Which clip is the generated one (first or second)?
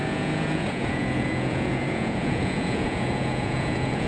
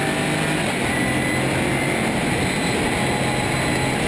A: first